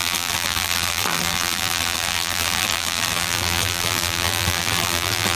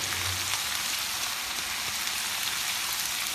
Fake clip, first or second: first